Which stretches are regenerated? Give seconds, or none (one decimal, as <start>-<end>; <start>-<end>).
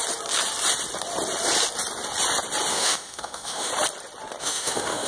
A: 2.7-3.7; 4.4-5.1